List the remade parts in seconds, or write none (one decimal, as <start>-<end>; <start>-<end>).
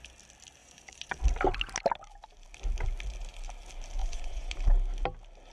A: 0.6-1.2; 4.0-4.6